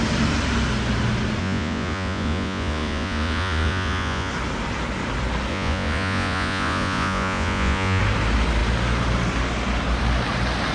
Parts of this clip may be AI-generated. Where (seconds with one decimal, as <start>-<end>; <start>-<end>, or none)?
1.4-4.3; 5.5-8.0